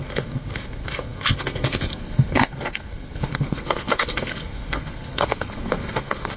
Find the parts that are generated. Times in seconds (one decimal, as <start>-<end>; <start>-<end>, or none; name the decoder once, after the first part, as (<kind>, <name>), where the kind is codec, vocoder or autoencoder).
0.0-6.4 (codec, SNAC)